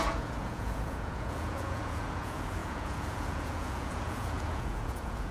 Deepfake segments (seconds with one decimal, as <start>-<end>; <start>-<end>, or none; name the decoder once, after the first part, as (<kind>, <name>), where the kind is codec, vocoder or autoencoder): 0.0-5.3 (vocoder, Vocos)